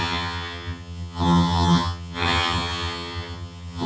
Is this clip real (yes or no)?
no